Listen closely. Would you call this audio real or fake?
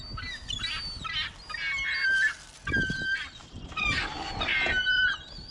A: real